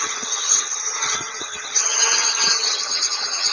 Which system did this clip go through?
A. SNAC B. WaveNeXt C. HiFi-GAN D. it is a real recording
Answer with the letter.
C